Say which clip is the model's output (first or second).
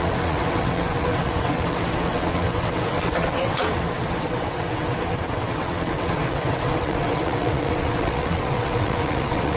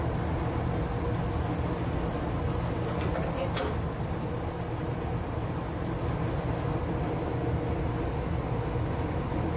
first